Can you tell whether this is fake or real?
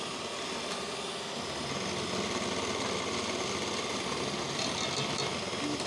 real